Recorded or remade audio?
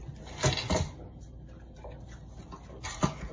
recorded